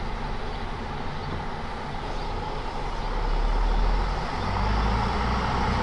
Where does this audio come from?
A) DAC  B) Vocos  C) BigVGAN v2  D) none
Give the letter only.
D